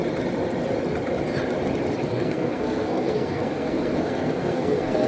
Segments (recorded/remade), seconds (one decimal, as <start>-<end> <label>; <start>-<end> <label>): 0.0-2.1 recorded; 2.1-5.1 remade